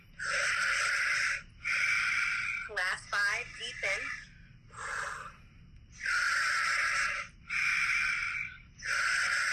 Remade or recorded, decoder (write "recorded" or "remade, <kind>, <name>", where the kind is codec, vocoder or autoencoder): recorded